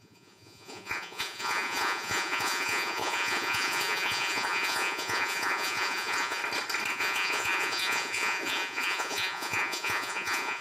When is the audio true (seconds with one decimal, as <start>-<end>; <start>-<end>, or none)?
6.4-6.9